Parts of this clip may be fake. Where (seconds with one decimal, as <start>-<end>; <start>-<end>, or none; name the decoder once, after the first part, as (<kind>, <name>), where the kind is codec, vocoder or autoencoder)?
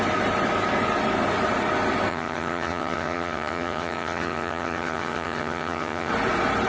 2.1-6.1 (vocoder, HiFi-GAN)